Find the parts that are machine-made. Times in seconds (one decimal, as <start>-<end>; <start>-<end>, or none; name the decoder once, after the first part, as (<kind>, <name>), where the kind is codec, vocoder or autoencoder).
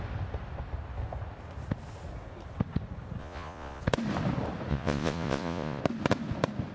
3.2-3.8 (vocoder, Vocos); 4.7-5.8